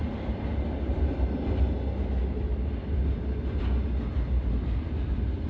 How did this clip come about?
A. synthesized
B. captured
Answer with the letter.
B